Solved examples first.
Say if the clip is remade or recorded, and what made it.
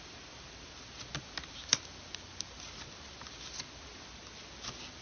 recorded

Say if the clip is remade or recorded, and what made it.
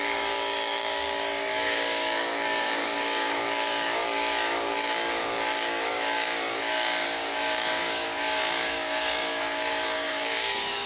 remade, codec, DAC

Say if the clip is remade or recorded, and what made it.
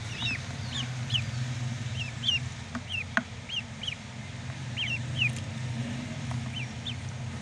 recorded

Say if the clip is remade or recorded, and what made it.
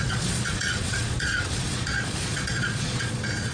remade, vocoder, Vocos